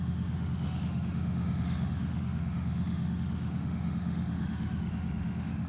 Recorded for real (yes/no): no